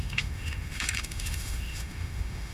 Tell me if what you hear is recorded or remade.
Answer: remade